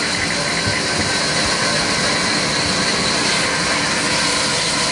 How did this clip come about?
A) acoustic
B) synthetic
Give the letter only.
A